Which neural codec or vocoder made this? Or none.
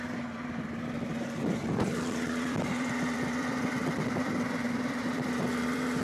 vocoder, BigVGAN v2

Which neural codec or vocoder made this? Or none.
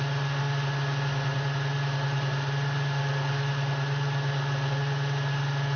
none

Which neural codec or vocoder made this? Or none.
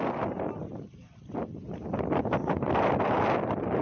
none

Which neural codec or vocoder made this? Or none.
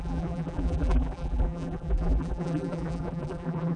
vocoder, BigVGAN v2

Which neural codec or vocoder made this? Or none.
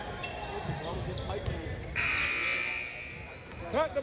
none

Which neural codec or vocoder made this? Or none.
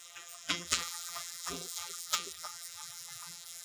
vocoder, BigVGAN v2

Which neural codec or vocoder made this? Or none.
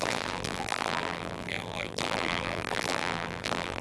vocoder, BigVGAN v2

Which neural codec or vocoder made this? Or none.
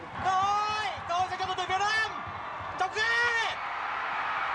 none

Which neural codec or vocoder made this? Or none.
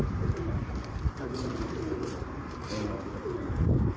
vocoder, BigVGAN v2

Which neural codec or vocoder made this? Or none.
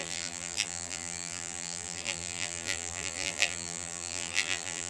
vocoder, BigVGAN v2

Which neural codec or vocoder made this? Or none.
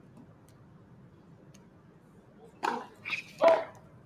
none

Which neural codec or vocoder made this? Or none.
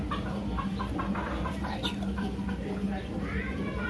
vocoder, BigVGAN v2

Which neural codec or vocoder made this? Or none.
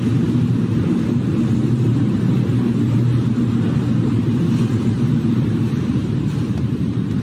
vocoder, BigVGAN v2